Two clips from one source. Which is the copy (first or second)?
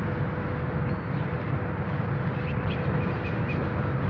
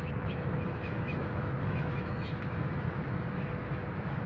second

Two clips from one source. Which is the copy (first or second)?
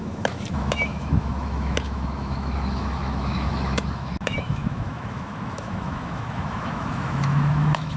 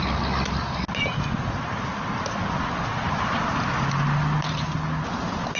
first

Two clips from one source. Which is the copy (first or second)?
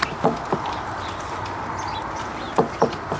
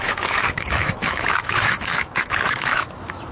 second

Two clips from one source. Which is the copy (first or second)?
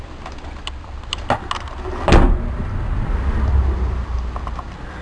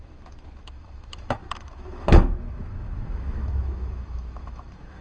second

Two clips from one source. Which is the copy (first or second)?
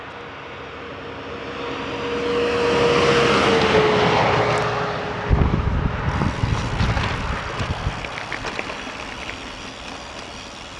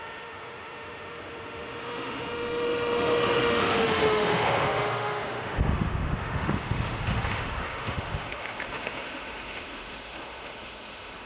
second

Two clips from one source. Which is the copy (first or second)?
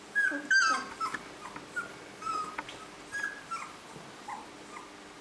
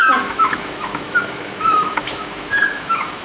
second